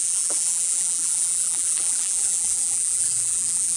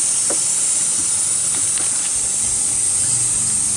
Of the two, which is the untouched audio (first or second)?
second